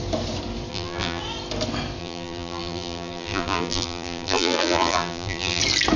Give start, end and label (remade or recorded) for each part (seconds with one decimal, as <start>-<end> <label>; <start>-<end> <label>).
0.0-0.7 recorded; 0.7-1.2 remade; 1.2-2.0 recorded; 2.0-5.6 remade; 5.6-6.0 recorded